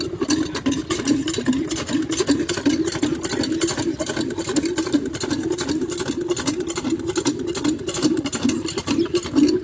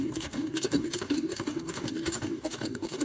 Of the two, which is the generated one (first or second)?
second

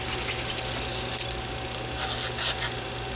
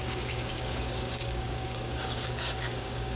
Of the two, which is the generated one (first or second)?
second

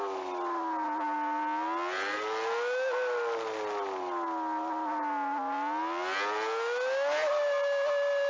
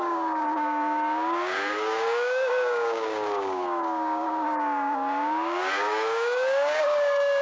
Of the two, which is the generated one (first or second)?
second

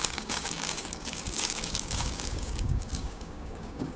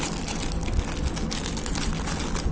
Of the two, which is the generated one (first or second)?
first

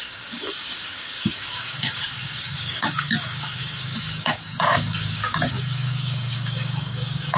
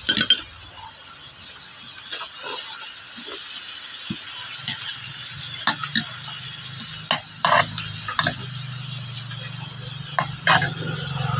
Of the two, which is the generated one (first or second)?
first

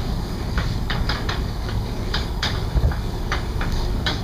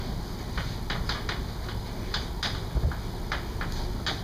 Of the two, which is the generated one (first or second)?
first